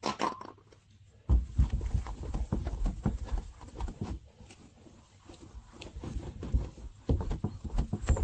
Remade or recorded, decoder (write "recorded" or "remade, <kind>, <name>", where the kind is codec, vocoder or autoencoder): recorded